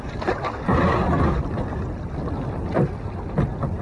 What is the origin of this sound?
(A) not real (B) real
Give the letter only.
B